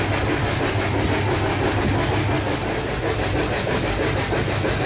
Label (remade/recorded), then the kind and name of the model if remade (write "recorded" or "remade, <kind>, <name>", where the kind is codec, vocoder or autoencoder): recorded